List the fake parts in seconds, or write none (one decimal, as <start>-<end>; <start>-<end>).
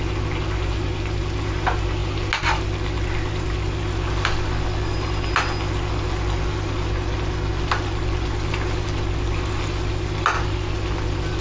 none